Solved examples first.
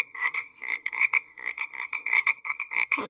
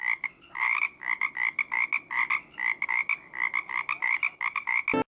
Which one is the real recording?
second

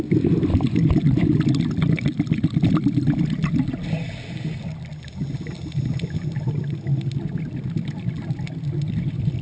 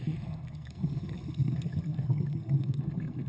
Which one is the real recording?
first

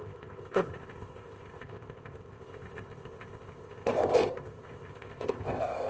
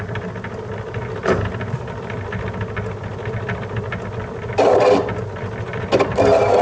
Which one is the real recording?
second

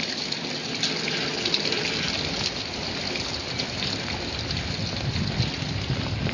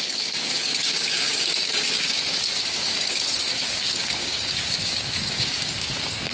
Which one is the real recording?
first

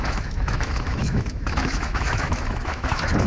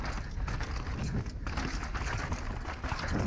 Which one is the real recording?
second